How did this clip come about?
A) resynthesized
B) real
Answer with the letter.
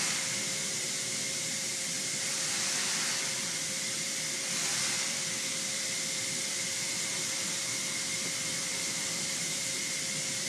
A